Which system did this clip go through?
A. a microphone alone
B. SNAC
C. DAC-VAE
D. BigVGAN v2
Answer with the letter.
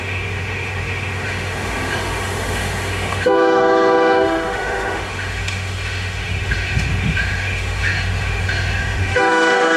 C